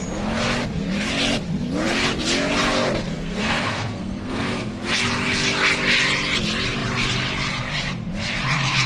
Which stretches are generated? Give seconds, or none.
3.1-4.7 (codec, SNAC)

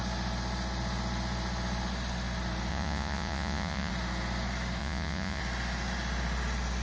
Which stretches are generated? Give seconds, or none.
2.7-3.9 (vocoder, Vocos); 4.8-5.4

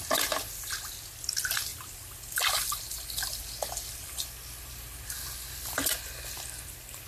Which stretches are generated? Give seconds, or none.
1.7-5.0 (vocoder, BigVGAN v2)